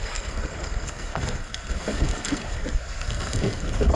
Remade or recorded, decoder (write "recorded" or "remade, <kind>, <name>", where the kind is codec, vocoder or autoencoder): remade, codec, SNAC